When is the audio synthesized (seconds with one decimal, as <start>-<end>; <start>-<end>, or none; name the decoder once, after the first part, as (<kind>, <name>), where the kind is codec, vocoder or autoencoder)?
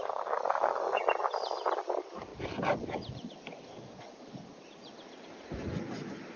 0.0-1.0 (codec, DAC)